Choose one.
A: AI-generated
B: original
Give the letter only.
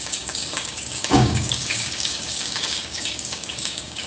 A